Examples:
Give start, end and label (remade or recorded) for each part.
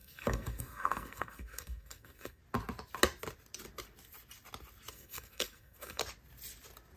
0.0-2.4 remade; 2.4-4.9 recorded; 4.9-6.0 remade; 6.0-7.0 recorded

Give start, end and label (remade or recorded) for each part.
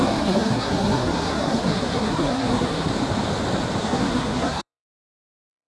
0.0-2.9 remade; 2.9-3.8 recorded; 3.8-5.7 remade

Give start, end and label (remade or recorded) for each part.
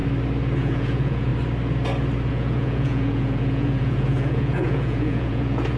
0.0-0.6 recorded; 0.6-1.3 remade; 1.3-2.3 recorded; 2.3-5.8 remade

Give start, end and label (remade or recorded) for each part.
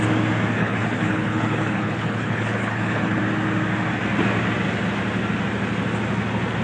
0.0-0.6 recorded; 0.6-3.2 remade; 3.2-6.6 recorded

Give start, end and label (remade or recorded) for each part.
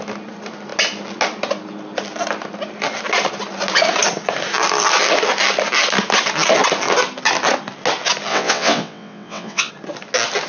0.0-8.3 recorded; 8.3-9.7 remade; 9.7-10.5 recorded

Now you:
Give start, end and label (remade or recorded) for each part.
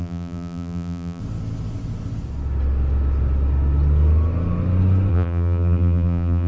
0.0-1.2 remade; 1.2-5.1 recorded; 5.1-6.5 remade